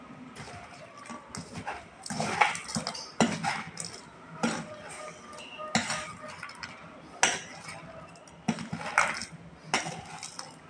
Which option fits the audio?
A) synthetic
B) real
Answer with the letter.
B